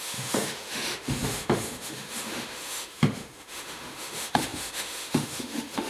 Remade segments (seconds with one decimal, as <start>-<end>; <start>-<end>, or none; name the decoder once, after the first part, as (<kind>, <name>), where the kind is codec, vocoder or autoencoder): 0.0-5.9 (autoencoder, DAC-VAE)